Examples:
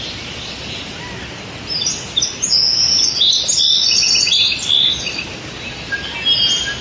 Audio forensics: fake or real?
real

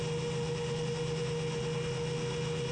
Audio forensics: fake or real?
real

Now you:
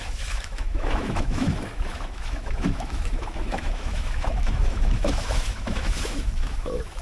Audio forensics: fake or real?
fake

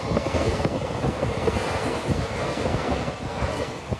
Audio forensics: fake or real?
fake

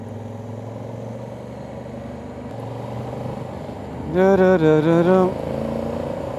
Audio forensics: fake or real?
real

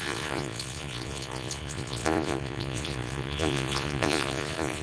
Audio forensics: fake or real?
fake